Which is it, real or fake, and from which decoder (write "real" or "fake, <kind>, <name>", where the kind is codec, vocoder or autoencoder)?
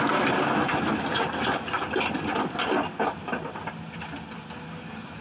real